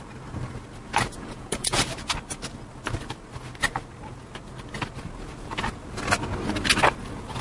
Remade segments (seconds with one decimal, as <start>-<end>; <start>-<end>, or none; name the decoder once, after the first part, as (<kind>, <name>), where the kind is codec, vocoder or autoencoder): 1.1-1.8 (vocoder, Vocos)